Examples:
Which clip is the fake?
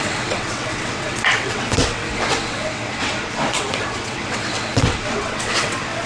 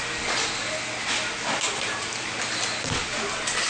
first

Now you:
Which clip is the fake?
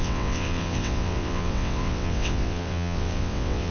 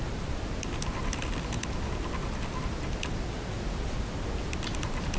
first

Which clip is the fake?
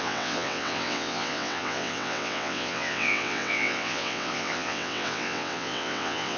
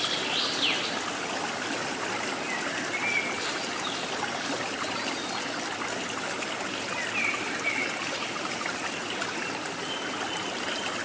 first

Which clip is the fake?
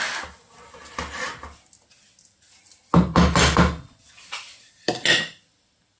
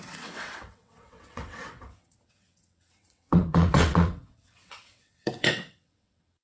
second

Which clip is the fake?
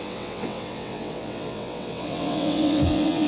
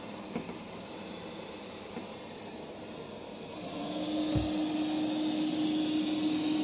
first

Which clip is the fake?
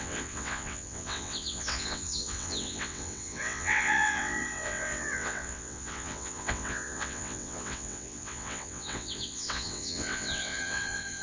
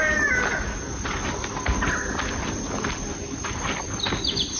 first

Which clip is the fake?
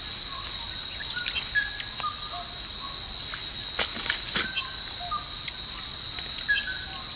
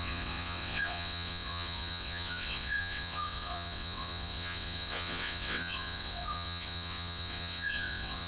second